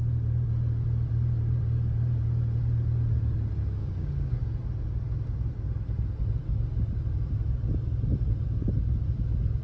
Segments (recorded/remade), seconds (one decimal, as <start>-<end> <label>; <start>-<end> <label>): 0.0-3.8 recorded; 3.8-4.4 remade; 4.4-9.6 recorded